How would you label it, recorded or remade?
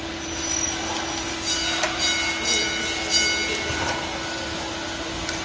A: recorded